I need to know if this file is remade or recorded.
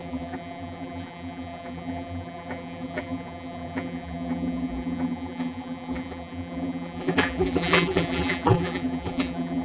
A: remade